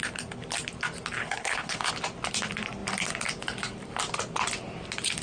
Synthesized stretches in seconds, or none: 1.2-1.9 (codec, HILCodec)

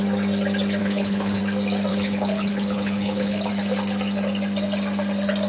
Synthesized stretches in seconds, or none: 0.8-1.4 (codec, HILCodec); 1.9-3.5